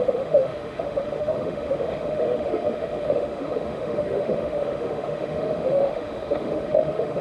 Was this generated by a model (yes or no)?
yes